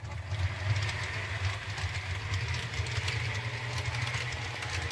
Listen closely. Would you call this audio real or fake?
real